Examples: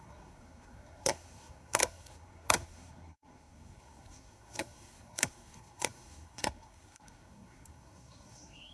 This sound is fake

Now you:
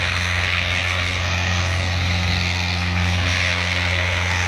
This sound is fake